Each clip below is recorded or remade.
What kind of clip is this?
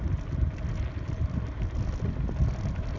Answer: recorded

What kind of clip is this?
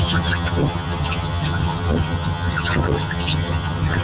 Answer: remade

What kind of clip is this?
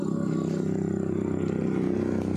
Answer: recorded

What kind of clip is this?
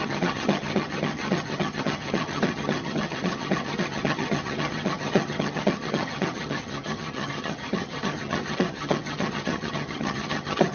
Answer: remade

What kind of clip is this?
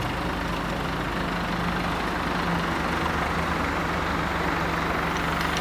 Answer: recorded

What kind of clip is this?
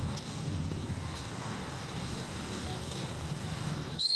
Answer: remade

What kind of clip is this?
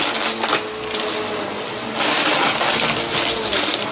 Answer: recorded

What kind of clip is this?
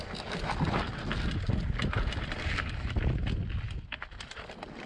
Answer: recorded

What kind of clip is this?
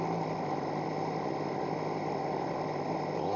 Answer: recorded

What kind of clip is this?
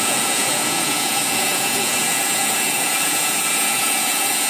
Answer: remade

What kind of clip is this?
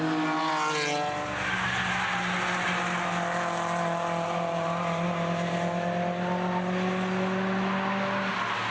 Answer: recorded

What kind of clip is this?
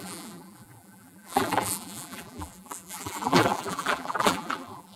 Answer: remade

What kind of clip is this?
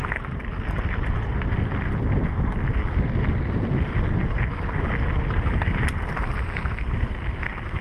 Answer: recorded